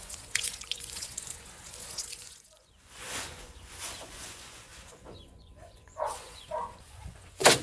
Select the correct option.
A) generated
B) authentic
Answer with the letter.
A